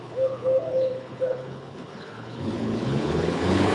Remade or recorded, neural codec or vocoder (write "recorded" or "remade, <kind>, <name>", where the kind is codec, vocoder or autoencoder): remade, codec, HILCodec